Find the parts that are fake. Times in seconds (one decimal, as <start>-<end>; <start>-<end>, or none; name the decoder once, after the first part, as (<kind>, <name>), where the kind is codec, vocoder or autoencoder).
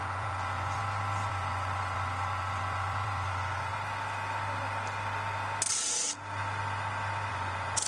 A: 0.0-0.8 (vocoder, Vocos); 1.3-3.7; 7.3-7.9